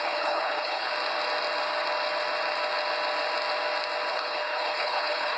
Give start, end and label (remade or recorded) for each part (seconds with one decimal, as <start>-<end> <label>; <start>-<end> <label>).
0.0-0.9 remade; 0.9-4.1 recorded; 4.1-5.4 remade